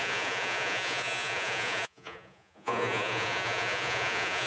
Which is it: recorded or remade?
remade